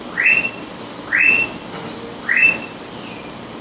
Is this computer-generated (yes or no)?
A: no